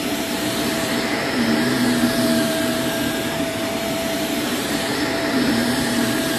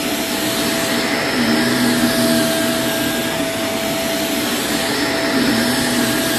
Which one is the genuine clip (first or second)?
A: second